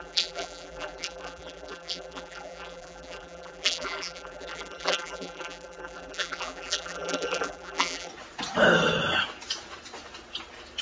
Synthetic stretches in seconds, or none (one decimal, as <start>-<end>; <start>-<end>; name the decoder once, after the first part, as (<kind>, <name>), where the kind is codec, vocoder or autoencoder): 0.0-8.1 (vocoder, BigVGAN v2)